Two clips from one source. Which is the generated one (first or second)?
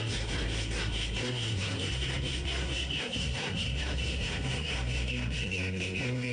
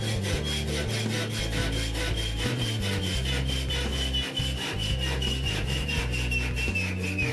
first